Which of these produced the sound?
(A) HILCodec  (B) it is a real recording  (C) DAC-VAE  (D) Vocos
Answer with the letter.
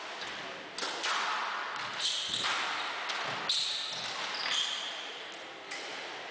B